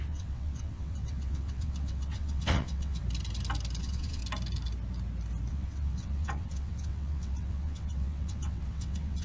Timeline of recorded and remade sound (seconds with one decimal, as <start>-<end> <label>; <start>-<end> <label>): 0.0-3.0 remade; 3.0-3.8 recorded; 3.8-4.2 remade; 4.2-5.5 recorded; 5.5-9.2 remade